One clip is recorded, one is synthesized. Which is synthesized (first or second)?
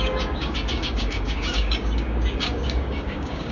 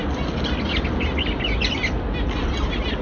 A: first